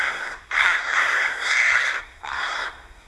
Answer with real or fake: fake